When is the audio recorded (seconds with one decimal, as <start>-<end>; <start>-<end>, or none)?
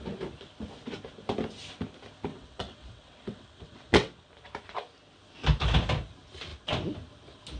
0.0-2.3; 4.3-7.6